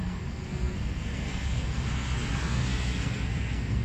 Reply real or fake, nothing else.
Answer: fake